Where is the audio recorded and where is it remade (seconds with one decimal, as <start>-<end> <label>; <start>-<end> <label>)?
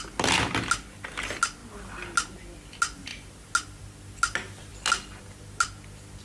0.0-6.2 recorded